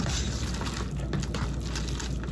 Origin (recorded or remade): recorded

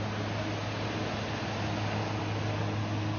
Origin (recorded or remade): recorded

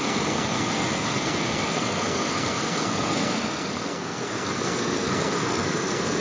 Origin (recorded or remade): remade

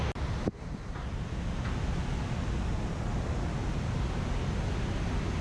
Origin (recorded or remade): recorded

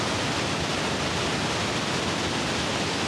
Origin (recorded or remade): recorded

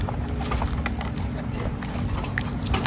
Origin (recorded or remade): recorded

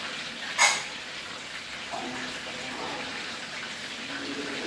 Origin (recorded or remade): recorded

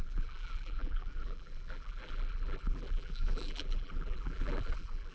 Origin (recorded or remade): remade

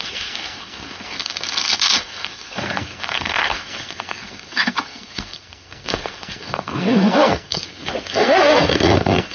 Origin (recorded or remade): remade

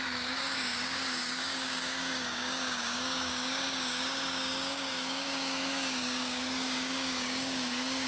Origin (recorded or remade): remade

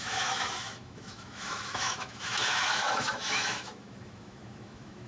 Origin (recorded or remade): remade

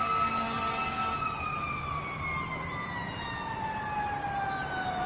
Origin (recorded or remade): recorded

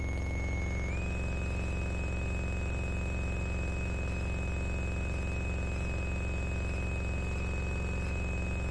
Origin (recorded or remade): recorded